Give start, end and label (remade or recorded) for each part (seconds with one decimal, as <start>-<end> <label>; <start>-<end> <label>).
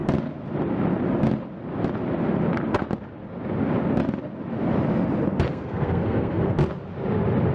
0.0-5.5 recorded; 5.5-6.5 remade; 6.5-7.5 recorded